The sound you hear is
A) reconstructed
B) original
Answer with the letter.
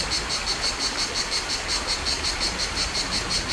B